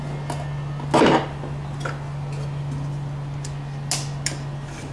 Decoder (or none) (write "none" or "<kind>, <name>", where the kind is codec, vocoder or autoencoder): none